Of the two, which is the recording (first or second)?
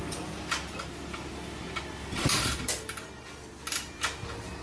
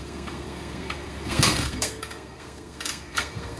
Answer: first